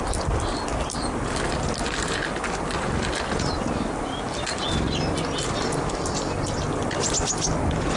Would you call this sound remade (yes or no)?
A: no